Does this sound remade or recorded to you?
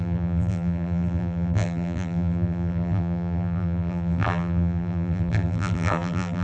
remade